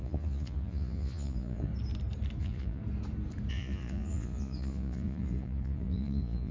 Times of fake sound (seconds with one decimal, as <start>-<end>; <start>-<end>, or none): 0.0-1.7; 2.4-2.8; 3.5-6.5